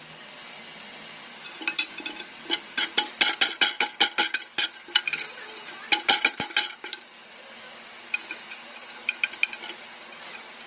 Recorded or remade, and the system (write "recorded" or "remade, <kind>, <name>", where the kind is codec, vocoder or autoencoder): recorded